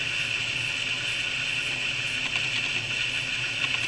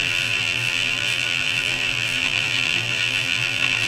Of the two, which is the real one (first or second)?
first